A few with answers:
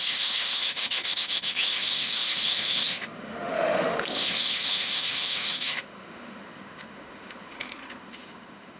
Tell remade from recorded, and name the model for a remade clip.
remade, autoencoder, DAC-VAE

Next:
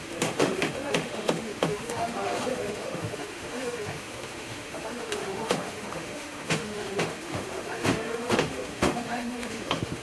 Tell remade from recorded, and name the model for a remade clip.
remade, autoencoder, DAC-VAE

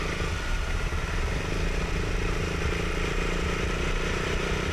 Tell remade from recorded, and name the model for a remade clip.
recorded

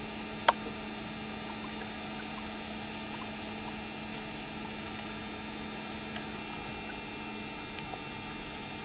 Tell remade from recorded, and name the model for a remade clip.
recorded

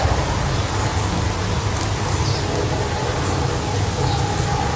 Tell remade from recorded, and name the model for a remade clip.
recorded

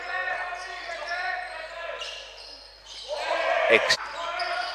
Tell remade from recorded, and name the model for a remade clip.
recorded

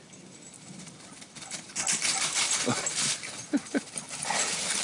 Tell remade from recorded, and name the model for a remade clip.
remade, vocoder, BigVGAN v2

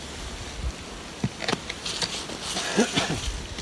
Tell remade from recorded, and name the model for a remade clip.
recorded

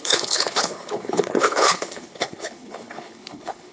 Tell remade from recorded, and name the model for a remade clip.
remade, codec, HILCodec